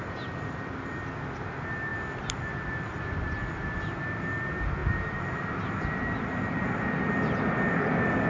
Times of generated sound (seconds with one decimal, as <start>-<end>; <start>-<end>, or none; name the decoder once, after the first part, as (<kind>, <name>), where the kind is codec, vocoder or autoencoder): none

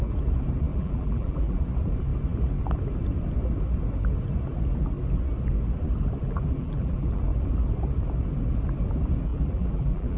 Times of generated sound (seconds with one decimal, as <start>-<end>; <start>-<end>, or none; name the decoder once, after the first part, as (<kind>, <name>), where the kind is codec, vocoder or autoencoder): 0.7-1.6 (vocoder, BigVGAN v2); 6.2-7.2; 9.3-10.2

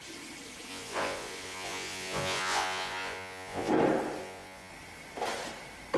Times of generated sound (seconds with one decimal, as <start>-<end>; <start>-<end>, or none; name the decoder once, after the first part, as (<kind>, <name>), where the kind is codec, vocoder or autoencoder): 0.7-3.7 (vocoder, Vocos); 4.2-4.7

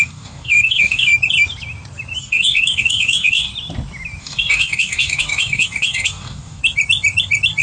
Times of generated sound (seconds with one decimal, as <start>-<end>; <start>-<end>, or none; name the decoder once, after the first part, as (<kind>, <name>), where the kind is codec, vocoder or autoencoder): 0.0-1.1 (codec, DAC); 2.2-3.5; 4.2-6.6

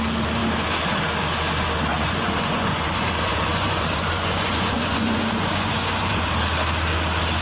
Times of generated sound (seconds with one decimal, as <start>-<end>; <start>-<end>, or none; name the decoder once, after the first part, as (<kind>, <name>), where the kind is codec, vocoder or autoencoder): 1.9-6.3 (vocoder, Vocos)